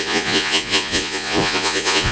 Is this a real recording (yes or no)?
no